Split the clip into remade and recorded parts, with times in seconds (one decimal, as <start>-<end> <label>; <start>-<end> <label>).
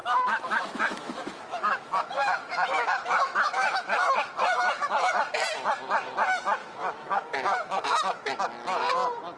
0.0-5.1 remade; 5.1-6.6 recorded; 6.6-8.4 remade; 8.4-9.4 recorded